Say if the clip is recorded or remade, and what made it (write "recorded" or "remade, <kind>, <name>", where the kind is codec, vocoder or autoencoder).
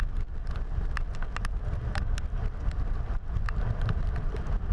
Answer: recorded